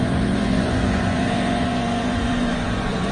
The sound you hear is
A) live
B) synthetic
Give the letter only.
B